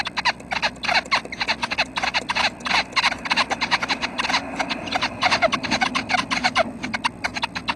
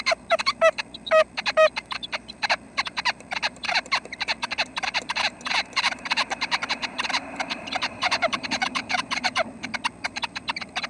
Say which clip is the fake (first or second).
second